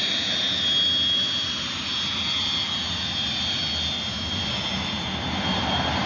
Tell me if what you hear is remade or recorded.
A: recorded